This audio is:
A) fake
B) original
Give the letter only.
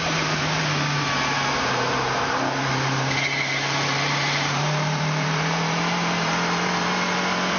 A